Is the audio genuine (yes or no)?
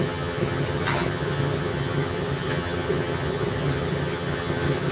no